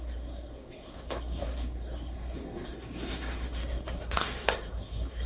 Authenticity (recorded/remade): remade